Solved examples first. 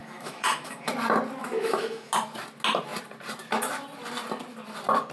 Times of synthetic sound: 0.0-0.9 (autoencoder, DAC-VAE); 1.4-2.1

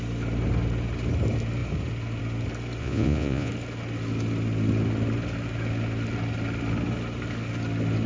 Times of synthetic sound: 2.8-3.5 (vocoder, Vocos)